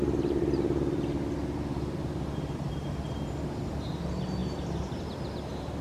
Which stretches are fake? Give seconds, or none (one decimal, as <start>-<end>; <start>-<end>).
none